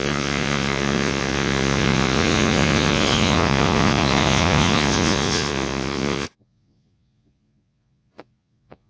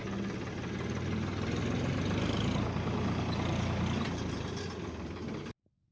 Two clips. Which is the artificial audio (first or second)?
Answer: first